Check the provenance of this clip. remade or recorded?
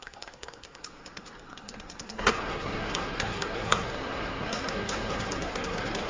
remade